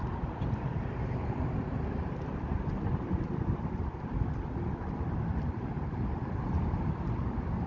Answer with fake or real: real